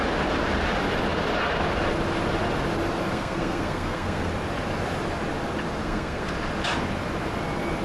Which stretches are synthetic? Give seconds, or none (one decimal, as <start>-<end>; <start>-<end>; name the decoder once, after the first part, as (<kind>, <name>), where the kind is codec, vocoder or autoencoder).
3.1-4.3 (codec, SNAC); 5.8-6.3